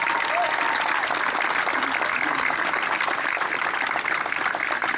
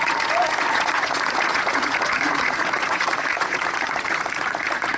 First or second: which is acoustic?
first